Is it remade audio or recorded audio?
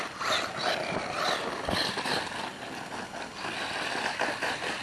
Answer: recorded